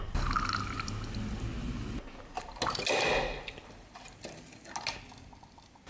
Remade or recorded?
recorded